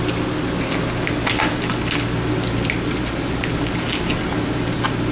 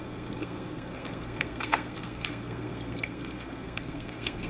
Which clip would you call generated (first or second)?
second